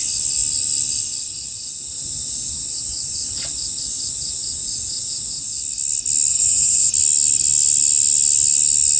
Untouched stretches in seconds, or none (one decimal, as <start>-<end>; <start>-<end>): 0.0-4.6; 5.1-6.3; 6.9-9.0